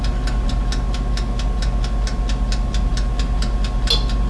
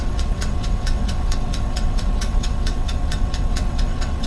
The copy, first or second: second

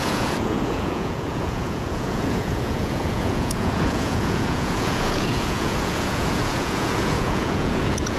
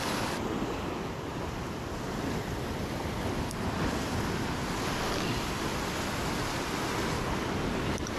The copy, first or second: first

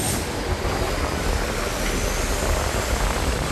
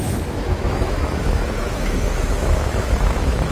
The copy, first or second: second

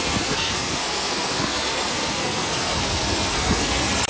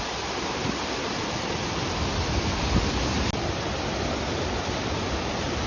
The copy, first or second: first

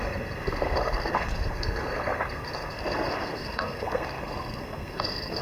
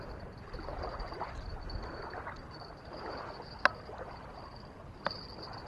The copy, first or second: first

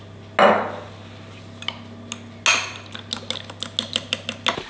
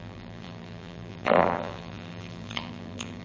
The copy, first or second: second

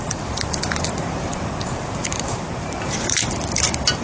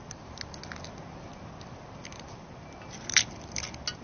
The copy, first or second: first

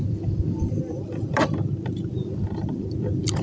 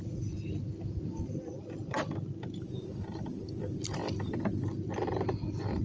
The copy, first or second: first